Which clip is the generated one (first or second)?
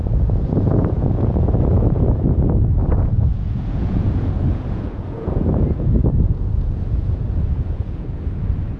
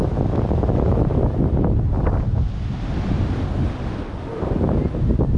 first